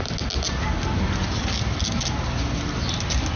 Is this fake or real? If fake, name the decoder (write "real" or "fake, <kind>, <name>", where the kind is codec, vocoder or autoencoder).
real